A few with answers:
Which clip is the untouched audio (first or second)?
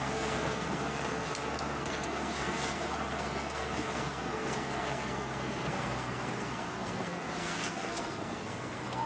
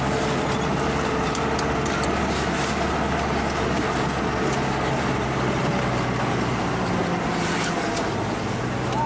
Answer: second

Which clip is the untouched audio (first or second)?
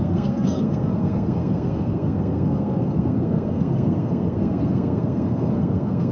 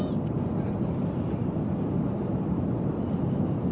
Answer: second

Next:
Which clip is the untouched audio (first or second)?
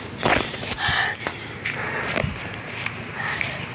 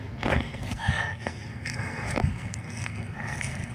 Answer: first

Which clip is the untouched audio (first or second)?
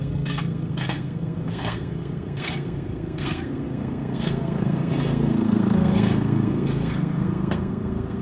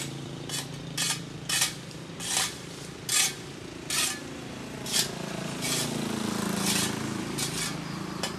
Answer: second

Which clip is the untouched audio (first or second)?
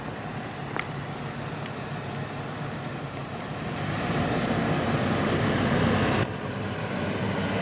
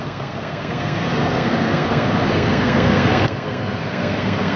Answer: first